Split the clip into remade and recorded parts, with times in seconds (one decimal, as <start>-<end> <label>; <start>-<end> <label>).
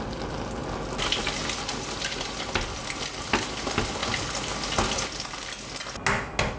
0.0-6.6 recorded